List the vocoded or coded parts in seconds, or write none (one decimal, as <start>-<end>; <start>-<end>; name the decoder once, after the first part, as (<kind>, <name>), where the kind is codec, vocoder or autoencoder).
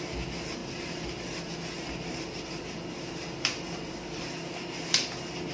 none